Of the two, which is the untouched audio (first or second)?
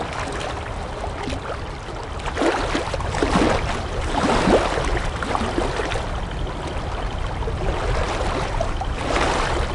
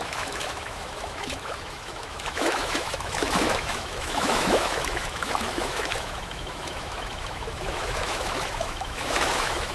first